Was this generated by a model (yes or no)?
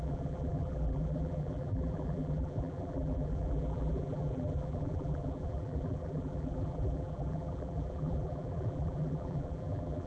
yes